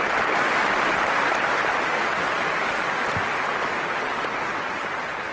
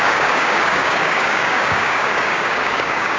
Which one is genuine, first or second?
first